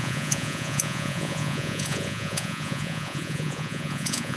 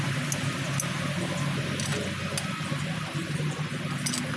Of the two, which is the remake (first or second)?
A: first